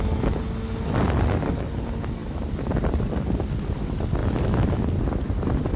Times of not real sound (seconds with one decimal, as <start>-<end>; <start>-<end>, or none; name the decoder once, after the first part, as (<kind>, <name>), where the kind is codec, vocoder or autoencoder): 2.2-3.3 (vocoder, BigVGAN v2); 4.2-5.8